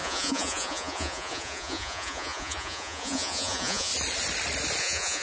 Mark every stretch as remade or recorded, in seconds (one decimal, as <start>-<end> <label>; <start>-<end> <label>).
0.0-3.9 remade; 3.9-4.8 recorded; 4.8-5.2 remade